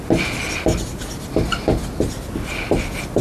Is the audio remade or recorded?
recorded